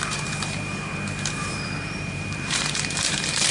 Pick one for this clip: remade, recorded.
remade